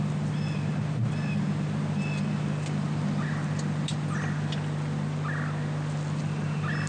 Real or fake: real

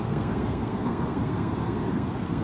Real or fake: fake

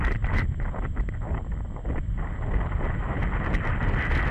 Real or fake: real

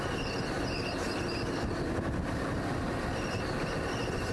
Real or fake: real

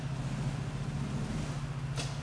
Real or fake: real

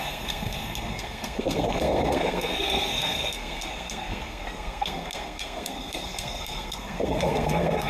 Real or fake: fake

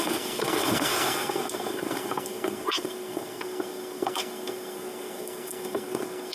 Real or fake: fake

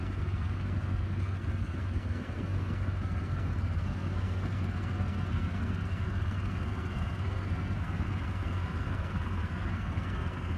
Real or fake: fake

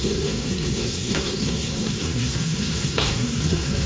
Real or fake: fake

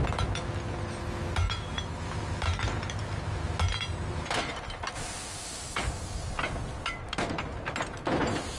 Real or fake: real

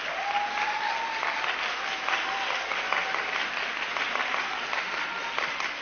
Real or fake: real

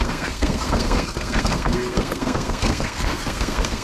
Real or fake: fake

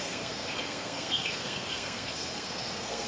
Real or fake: fake